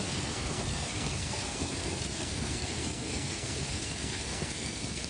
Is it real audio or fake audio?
fake